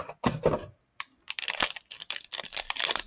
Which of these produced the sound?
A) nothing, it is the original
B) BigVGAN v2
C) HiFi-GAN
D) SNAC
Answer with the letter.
A